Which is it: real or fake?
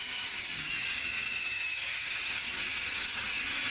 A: fake